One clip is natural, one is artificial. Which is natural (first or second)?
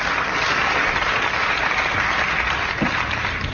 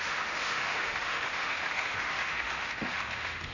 first